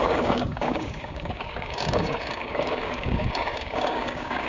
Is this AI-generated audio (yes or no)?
yes